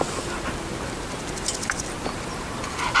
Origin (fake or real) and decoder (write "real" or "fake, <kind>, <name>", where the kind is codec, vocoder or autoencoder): real